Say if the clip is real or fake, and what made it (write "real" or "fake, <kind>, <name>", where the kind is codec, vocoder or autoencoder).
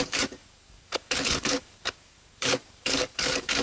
fake, codec, DAC